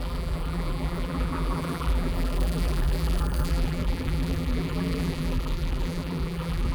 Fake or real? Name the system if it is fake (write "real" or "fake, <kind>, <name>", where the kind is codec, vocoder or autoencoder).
fake, vocoder, BigVGAN v2